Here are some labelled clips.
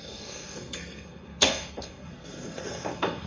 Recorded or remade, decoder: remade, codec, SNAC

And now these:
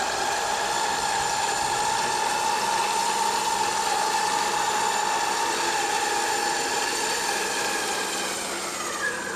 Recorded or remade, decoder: recorded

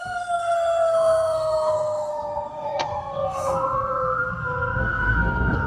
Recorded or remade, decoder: remade, codec, SNAC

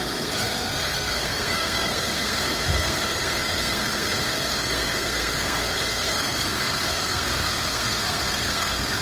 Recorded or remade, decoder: remade, codec, SNAC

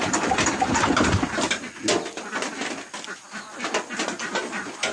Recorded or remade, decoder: recorded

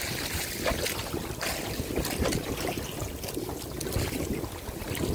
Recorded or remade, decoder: recorded